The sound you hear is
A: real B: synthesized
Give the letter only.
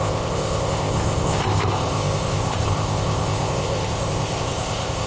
B